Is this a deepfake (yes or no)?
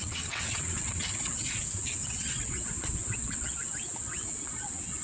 yes